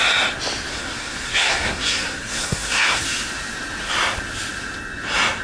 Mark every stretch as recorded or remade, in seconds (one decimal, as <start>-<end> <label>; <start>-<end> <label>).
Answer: 0.0-0.7 recorded; 0.7-3.0 remade; 3.0-5.4 recorded

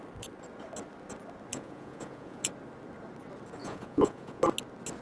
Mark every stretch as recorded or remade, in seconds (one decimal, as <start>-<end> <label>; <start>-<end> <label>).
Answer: 0.0-1.5 recorded; 1.5-2.5 remade; 2.5-3.6 recorded; 3.6-4.4 remade; 4.4-5.0 recorded

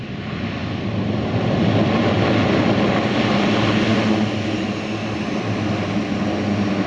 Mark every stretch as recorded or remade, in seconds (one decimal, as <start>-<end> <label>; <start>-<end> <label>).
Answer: 0.0-6.9 recorded

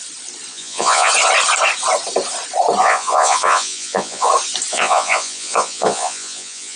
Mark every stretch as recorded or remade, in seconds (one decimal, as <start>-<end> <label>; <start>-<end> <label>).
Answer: 0.0-0.5 recorded; 0.5-1.1 remade; 1.1-2.8 recorded; 2.8-4.3 remade; 4.3-4.7 recorded; 4.7-6.8 remade

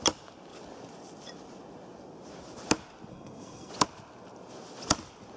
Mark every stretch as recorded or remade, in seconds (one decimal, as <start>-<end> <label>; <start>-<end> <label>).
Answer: 0.0-3.1 recorded; 3.1-3.7 remade; 3.7-5.4 recorded

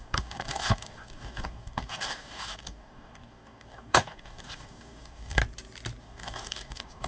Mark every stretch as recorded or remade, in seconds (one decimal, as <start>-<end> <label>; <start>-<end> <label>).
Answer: 0.0-5.4 remade; 5.4-6.0 recorded; 6.0-7.1 remade